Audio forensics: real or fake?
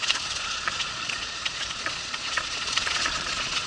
fake